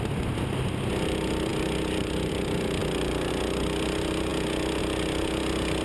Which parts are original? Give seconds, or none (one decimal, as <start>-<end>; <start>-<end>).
0.0-5.8